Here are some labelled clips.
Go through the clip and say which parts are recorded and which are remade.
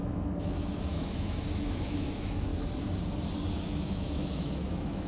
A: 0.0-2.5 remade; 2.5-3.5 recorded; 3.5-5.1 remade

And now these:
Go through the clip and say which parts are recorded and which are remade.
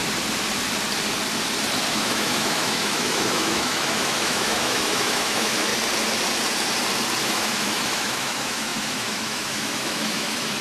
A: 0.0-1.9 recorded; 1.9-5.7 remade; 5.7-7.2 recorded; 7.2-10.6 remade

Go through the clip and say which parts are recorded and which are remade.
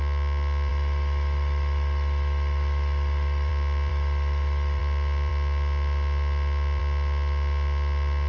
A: 0.0-0.7 recorded; 0.7-3.5 remade; 3.5-3.9 recorded; 3.9-4.8 remade; 4.8-8.3 recorded